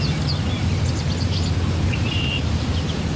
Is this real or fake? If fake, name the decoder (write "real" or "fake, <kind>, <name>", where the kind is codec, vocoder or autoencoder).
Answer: real